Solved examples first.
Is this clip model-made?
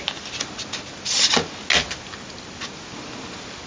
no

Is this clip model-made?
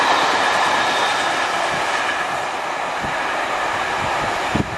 no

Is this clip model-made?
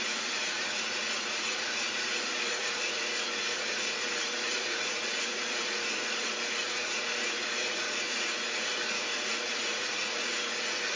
yes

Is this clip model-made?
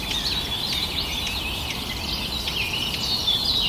no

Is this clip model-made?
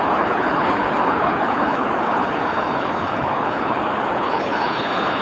yes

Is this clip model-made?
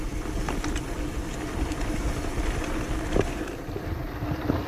no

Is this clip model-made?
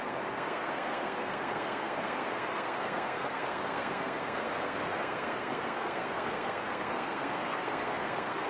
yes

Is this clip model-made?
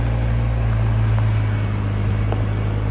no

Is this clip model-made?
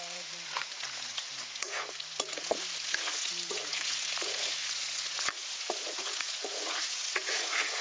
yes